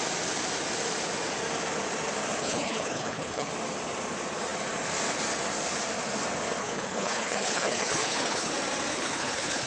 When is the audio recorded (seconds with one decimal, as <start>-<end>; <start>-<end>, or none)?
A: 0.0-2.4; 3.5-6.6; 8.5-8.9